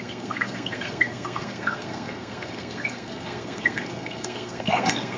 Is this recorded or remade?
remade